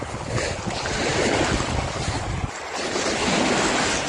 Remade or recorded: recorded